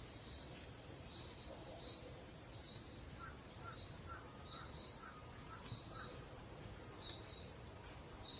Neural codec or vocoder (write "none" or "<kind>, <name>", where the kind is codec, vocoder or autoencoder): vocoder, BigVGAN v2